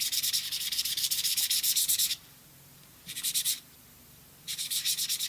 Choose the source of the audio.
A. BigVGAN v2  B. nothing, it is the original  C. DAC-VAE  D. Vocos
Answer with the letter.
A